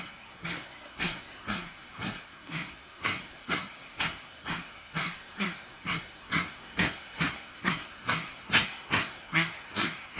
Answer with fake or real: fake